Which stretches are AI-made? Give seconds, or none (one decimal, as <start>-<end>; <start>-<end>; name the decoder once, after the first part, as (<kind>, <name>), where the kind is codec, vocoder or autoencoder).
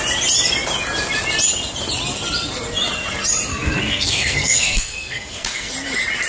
3.5-5.7 (codec, SNAC)